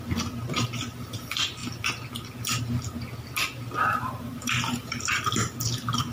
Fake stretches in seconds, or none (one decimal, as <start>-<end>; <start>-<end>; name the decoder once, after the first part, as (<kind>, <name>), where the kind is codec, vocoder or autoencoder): 3.8-5.0 (vocoder, BigVGAN v2)